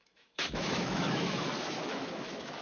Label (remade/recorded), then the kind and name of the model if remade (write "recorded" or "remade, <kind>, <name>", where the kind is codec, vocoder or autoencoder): remade, autoencoder, DAC-VAE